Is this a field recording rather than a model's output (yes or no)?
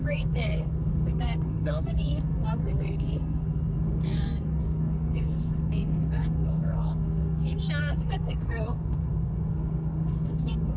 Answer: no